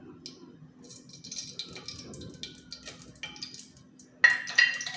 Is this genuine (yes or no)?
yes